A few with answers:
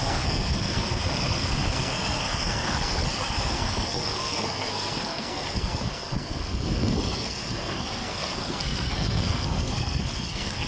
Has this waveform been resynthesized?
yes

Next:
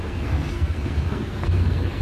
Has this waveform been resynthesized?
yes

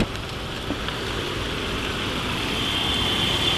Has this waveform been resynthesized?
no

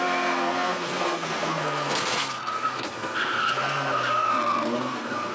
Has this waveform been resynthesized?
yes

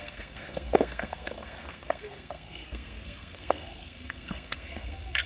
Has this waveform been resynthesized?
yes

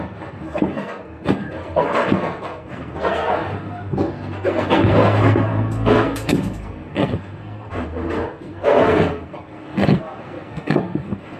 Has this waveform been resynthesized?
yes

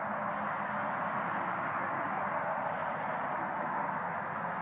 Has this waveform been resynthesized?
no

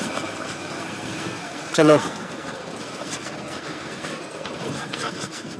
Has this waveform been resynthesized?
yes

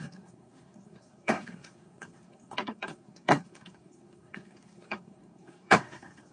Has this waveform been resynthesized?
yes